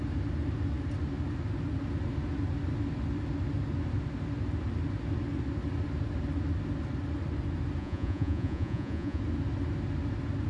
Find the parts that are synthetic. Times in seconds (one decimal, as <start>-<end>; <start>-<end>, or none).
7.8-9.2